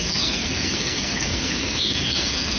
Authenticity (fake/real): fake